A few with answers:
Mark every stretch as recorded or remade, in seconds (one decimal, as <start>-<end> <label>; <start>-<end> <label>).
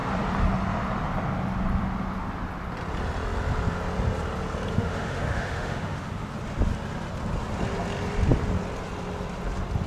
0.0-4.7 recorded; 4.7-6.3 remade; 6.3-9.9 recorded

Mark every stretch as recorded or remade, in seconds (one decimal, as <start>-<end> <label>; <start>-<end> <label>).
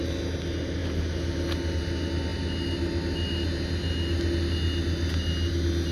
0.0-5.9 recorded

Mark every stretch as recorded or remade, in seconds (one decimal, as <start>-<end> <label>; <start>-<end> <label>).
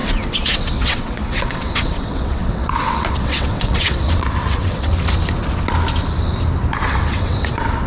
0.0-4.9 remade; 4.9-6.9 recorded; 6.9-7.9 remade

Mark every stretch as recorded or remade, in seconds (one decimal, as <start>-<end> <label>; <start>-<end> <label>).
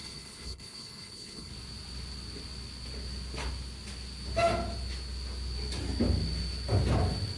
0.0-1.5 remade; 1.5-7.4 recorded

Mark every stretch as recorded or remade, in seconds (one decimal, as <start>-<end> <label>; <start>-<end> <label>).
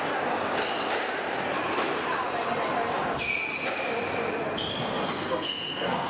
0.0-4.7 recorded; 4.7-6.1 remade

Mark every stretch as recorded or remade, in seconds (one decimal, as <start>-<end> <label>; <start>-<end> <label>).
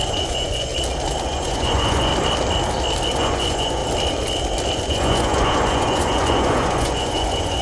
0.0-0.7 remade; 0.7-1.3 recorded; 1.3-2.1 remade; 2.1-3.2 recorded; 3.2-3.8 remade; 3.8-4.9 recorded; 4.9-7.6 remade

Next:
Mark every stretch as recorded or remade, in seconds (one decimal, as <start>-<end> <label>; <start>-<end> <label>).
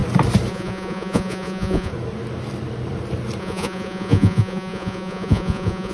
0.0-0.5 recorded; 0.5-1.9 remade; 1.9-3.4 recorded; 3.4-5.9 remade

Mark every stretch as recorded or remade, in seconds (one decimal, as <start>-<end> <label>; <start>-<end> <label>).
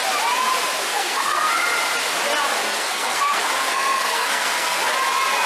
0.0-0.9 recorded; 0.9-1.5 remade; 1.5-2.6 recorded; 2.6-4.9 remade; 4.9-5.5 recorded